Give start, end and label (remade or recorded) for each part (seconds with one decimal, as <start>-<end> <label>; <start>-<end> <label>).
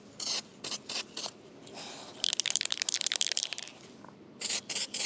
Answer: 0.0-5.1 recorded